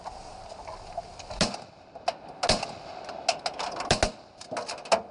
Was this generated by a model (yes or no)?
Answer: no